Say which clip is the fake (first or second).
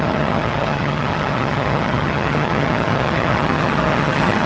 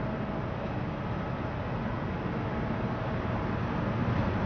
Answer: first